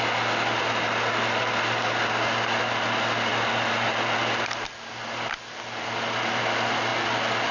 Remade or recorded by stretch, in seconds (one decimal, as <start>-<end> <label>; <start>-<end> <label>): 0.0-7.5 recorded